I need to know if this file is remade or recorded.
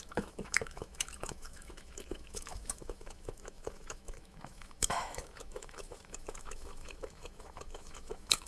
remade